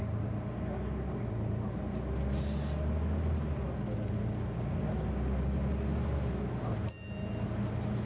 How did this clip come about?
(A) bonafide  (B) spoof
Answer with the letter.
A